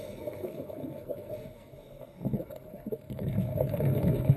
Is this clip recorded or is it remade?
remade